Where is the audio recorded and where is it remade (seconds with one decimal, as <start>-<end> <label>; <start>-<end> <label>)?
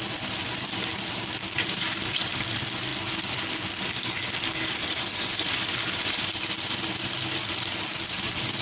0.0-2.9 remade; 2.9-4.7 recorded; 4.7-8.6 remade